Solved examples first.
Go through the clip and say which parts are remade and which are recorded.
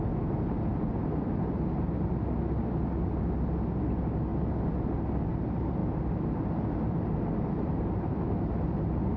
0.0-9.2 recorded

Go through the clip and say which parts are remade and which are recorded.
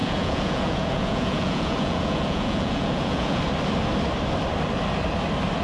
0.0-3.4 remade; 3.4-5.6 recorded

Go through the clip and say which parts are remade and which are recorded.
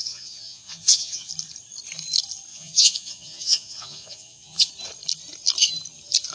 0.0-1.3 remade; 1.3-2.5 recorded; 2.5-4.7 remade; 4.7-6.3 recorded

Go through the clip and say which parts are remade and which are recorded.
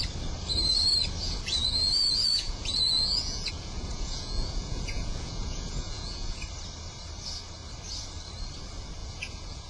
0.0-1.2 recorded; 1.2-6.4 remade; 6.4-9.0 recorded; 9.0-9.7 remade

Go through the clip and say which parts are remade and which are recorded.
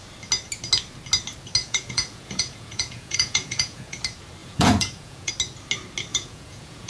0.0-1.6 recorded; 1.6-4.0 remade; 4.0-4.4 recorded; 4.4-5.3 remade; 5.3-6.1 recorded; 6.1-6.9 remade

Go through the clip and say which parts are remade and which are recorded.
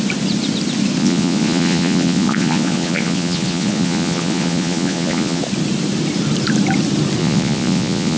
0.0-1.0 recorded; 1.0-5.4 remade; 5.4-7.2 recorded; 7.2-8.2 remade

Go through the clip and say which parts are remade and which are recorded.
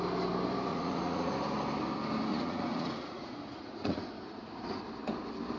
0.0-0.7 recorded; 0.7-1.3 remade; 1.3-2.3 recorded; 2.3-4.8 remade; 4.8-5.6 recorded